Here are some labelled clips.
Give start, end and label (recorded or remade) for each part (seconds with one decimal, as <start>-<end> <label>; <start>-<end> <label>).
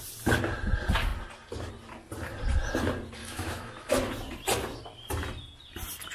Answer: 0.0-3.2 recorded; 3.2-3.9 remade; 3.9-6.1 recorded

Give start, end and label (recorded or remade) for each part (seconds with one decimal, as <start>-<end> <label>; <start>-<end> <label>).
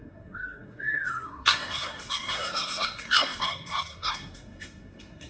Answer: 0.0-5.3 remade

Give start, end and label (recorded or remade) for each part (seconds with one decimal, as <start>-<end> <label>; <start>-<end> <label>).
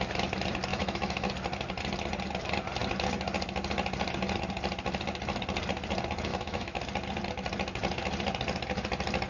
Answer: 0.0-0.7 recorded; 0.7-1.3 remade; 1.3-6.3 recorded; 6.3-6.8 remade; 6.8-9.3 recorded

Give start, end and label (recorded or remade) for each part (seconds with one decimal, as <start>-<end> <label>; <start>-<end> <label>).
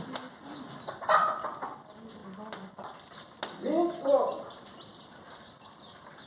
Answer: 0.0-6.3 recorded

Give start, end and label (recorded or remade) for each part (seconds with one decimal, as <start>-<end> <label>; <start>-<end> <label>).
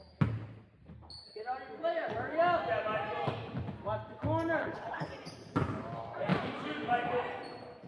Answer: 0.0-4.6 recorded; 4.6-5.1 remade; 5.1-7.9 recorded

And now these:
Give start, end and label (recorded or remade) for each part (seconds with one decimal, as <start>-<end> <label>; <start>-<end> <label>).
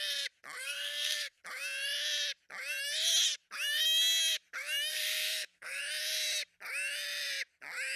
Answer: 0.0-0.6 recorded; 0.6-1.4 remade; 1.4-4.9 recorded; 4.9-5.8 remade; 5.8-8.0 recorded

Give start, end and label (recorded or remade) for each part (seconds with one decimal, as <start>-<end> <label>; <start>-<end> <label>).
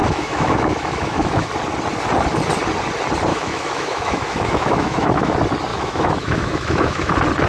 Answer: 0.0-1.5 remade; 1.5-3.3 recorded; 3.3-5.3 remade; 5.3-5.7 recorded; 5.7-7.1 remade; 7.1-7.5 recorded